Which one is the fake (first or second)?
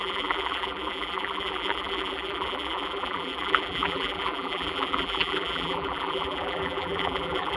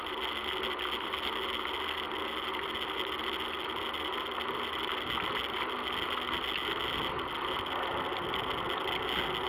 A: first